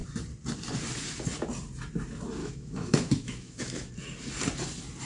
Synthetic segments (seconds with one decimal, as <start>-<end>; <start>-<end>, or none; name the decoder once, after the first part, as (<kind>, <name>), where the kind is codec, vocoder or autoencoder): 2.4-3.9 (autoencoder, DAC-VAE)